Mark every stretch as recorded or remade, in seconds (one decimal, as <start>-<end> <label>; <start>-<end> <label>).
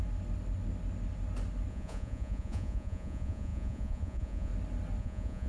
0.0-1.7 recorded; 1.7-4.5 remade; 4.5-5.0 recorded; 5.0-5.5 remade